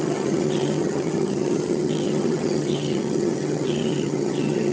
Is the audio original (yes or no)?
no